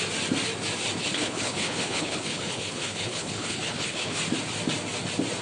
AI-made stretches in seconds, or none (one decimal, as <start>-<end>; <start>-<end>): 1.0-4.2